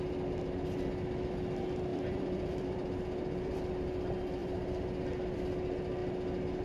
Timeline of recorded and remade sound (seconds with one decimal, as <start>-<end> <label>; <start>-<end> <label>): 0.0-1.9 recorded; 1.9-3.7 remade; 3.7-4.4 recorded; 4.4-5.4 remade; 5.4-6.6 recorded